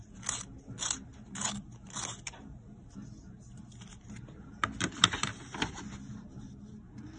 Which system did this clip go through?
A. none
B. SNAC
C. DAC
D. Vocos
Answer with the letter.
A